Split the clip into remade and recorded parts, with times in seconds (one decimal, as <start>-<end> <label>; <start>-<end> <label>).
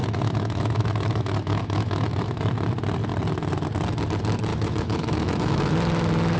0.0-2.4 remade; 2.4-4.5 recorded; 4.5-5.7 remade; 5.7-6.4 recorded